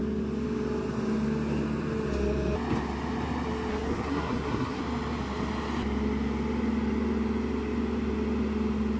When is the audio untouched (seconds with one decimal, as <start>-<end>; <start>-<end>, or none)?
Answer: 0.0-3.7; 4.8-9.0